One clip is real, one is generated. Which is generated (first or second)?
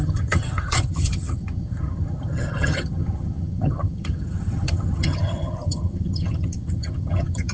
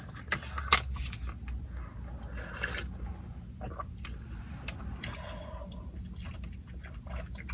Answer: first